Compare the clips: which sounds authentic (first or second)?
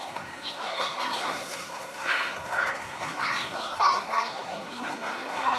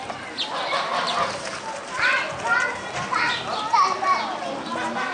second